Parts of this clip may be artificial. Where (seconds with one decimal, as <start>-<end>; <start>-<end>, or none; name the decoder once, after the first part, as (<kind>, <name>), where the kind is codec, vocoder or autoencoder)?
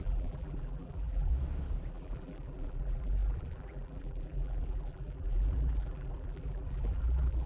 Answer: 0.0-1.3 (vocoder, BigVGAN v2); 1.9-7.5